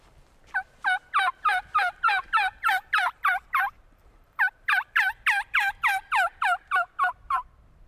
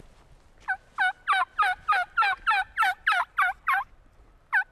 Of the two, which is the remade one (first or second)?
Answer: first